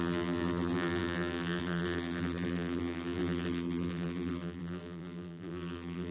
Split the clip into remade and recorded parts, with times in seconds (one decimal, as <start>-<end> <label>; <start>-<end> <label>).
0.0-6.1 remade